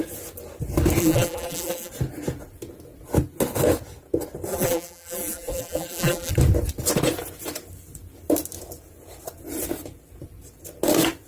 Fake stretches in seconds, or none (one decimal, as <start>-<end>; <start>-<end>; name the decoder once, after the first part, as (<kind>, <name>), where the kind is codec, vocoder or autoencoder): 1.0-1.9 (vocoder, BigVGAN v2); 4.5-6.3

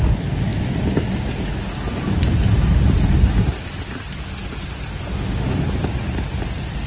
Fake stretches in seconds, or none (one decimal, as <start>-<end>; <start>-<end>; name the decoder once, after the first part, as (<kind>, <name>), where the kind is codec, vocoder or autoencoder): 5.1-5.6 (autoencoder, DAC-VAE)

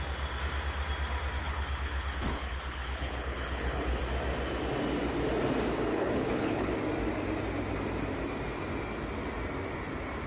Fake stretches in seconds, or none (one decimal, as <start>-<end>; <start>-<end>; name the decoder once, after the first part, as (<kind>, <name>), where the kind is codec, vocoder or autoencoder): 1.4-4.0 (codec, HILCodec); 5.9-6.7

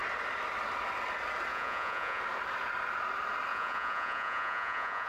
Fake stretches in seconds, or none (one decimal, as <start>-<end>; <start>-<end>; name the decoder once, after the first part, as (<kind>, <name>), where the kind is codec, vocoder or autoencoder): 1.5-2.2 (vocoder, Vocos); 3.5-5.1

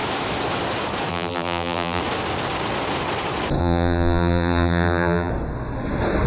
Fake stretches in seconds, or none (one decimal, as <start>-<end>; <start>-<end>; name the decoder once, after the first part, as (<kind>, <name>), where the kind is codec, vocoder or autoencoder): 1.1-2.0 (vocoder, BigVGAN v2); 3.6-5.3

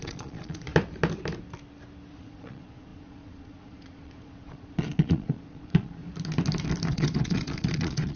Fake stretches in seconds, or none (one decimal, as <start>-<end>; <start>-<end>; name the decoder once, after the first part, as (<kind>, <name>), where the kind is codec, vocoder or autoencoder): 0.0-0.7 (vocoder, Vocos); 2.1-6.0; 6.9-8.2